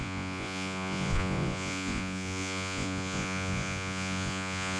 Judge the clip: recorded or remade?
remade